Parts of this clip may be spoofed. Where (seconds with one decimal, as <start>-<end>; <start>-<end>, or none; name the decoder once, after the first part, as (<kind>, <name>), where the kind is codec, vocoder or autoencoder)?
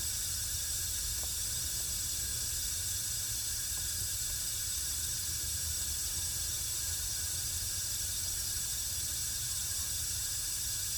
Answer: 0.0-2.3 (vocoder, BigVGAN v2); 3.2-11.0